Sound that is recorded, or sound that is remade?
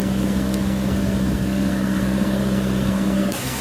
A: remade